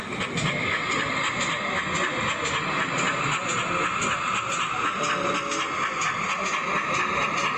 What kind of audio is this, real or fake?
real